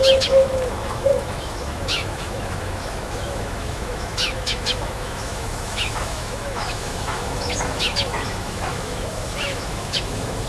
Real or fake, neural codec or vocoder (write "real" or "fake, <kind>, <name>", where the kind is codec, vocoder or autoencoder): fake, autoencoder, DAC-VAE